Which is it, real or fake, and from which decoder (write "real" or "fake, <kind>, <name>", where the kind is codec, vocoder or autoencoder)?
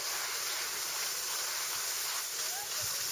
real